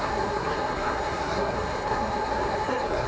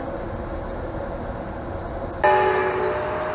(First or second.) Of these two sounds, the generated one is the first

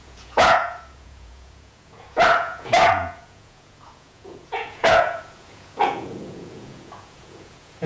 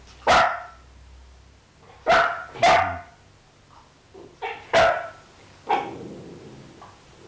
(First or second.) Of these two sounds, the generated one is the first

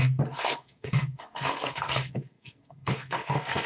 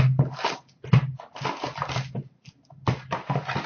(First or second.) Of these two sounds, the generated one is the first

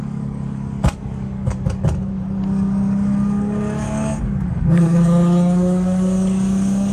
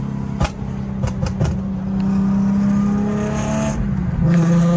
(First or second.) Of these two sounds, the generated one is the first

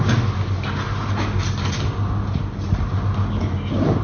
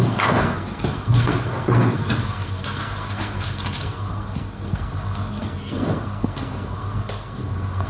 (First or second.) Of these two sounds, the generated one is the second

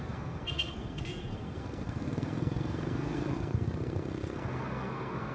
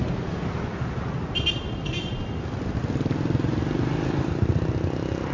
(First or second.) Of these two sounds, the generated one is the first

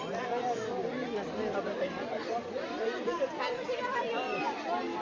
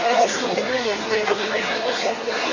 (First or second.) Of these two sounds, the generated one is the second